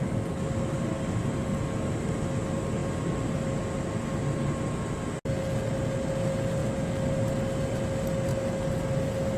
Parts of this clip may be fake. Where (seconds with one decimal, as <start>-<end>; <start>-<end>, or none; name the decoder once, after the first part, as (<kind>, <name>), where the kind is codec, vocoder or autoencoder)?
none

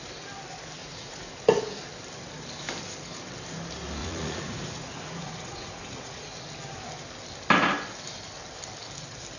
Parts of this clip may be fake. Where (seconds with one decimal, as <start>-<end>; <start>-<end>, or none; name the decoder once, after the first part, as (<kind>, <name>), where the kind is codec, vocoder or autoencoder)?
0.8-1.4 (vocoder, Vocos); 4.0-6.2

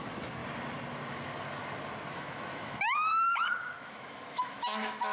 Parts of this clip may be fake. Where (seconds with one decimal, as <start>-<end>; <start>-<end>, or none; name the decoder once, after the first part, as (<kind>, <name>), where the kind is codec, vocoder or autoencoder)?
0.0-0.4 (autoencoder, DAC-VAE); 2.1-5.1

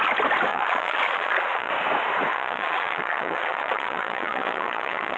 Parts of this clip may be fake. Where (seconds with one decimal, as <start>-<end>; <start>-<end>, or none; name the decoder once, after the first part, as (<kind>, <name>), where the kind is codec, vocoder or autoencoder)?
0.5-1.7 (vocoder, Vocos); 2.3-5.2

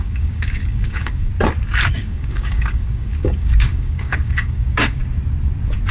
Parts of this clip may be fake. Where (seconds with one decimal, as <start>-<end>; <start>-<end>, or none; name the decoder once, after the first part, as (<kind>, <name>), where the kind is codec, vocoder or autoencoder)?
0.0-1.3 (codec, DAC); 1.9-5.0

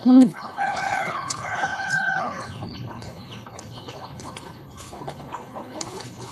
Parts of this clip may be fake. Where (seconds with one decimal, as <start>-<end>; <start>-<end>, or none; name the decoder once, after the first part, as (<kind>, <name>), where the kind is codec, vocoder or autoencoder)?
0.0-6.3 (codec, HILCodec)

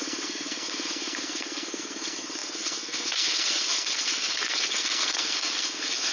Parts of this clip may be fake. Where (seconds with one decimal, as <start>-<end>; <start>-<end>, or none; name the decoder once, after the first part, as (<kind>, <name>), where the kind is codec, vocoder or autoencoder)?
0.0-6.1 (codec, SNAC)

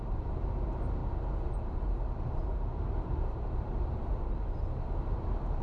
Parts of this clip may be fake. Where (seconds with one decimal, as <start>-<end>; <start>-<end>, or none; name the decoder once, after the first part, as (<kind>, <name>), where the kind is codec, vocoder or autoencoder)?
0.0-1.0 (vocoder, BigVGAN v2); 1.7-5.6